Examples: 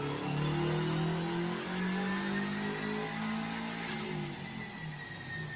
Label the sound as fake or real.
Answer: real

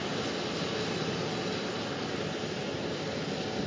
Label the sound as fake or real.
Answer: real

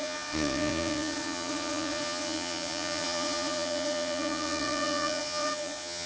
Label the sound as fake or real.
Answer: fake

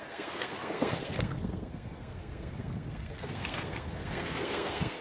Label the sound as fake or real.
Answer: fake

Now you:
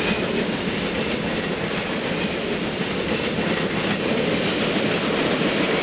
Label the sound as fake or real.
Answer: real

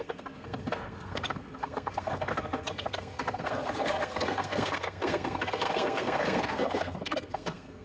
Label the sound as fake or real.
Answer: fake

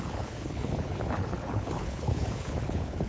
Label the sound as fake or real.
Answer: fake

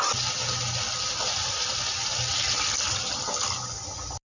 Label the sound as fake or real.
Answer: real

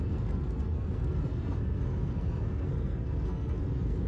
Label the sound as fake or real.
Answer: fake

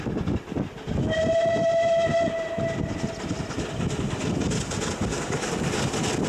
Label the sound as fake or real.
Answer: real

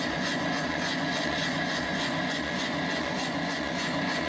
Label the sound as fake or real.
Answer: fake